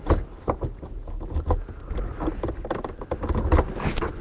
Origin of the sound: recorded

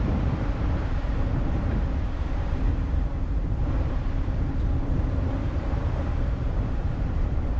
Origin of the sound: remade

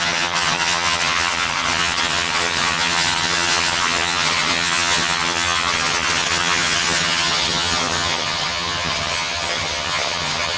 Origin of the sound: remade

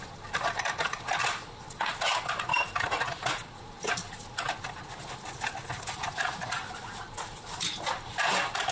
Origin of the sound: recorded